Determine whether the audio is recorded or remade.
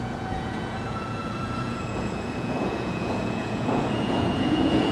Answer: remade